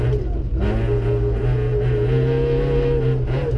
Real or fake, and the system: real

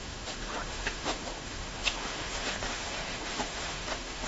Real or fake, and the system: fake, autoencoder, DAC-VAE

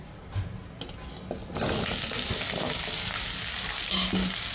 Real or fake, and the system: real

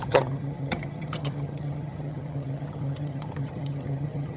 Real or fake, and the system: fake, vocoder, HiFi-GAN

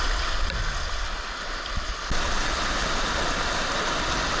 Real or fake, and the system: real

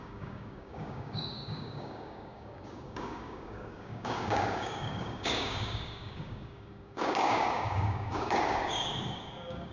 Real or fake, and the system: fake, codec, DAC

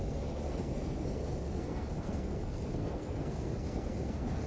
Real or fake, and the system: fake, codec, SNAC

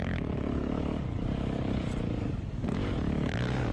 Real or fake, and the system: fake, codec, DAC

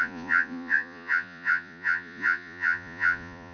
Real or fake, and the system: fake, vocoder, Vocos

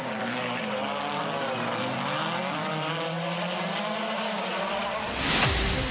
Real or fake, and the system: real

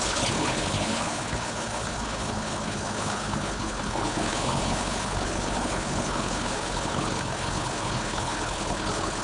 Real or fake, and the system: fake, codec, HILCodec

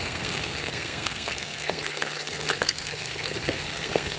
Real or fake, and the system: fake, codec, SNAC